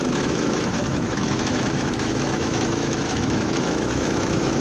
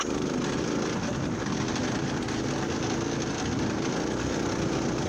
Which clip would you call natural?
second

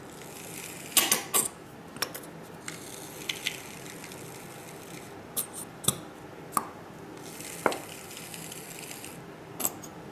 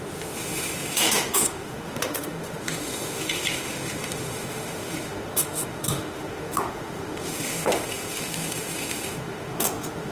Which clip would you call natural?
first